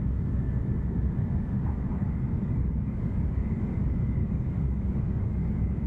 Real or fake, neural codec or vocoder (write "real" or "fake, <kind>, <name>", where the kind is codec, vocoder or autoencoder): fake, codec, DAC